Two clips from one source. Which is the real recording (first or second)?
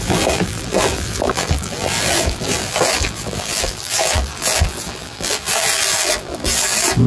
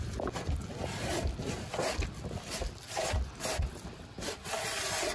second